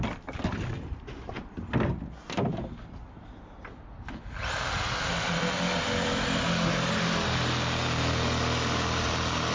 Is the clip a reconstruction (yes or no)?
no